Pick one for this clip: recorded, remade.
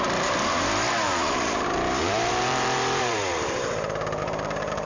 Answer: remade